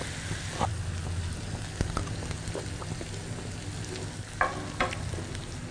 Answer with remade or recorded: recorded